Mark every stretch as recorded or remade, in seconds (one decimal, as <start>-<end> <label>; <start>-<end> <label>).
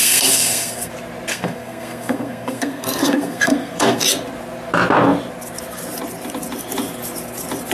0.0-0.9 remade; 0.9-1.3 recorded; 1.3-4.0 remade; 4.0-7.7 recorded